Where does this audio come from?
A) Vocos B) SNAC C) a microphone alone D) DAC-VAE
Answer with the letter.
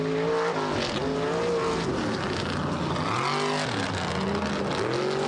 C